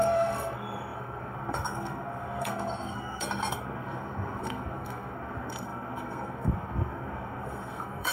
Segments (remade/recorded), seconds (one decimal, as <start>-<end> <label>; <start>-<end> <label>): 0.0-8.1 remade